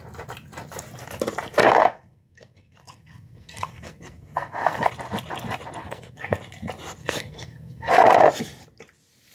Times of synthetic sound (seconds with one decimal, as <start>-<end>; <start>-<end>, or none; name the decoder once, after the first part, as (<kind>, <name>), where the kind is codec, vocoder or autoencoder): 1.6-4.9 (codec, SNAC); 5.8-6.4; 7.0-7.9